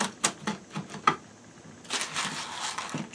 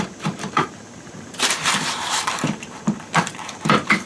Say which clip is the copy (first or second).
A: second